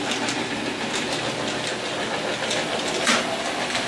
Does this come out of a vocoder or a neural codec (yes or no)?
no